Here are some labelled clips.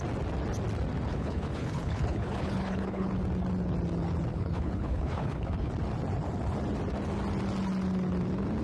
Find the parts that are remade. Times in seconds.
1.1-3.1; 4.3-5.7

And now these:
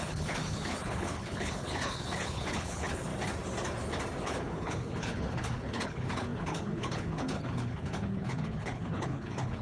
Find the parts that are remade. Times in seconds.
0.0-3.1; 4.2-9.6